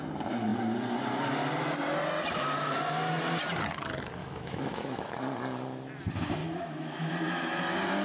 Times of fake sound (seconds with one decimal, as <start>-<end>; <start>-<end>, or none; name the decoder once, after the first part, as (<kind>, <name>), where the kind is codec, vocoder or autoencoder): 4.2-5.2 (autoencoder, DAC-VAE); 6.4-7.1